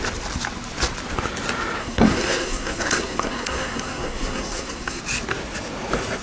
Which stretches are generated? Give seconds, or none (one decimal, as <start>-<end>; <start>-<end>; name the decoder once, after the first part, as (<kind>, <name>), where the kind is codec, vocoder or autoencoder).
1.8-5.0 (codec, SNAC)